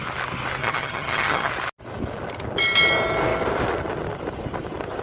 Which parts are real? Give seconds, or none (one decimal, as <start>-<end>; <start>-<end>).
0.0-0.6; 1.5-5.0

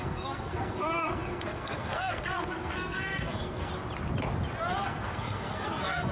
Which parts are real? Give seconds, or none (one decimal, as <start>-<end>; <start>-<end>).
3.7-4.8

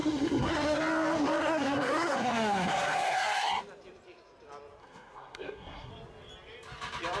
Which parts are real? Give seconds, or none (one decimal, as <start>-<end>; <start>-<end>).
0.8-1.4; 3.6-4.8; 5.9-7.2